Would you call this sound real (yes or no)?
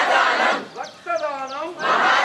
yes